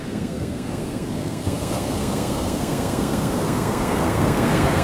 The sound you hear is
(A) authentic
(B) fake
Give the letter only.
B